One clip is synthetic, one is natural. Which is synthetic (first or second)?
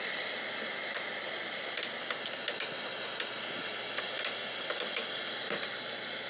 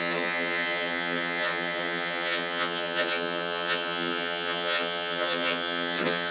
second